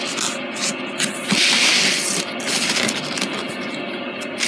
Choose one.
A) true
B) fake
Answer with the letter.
A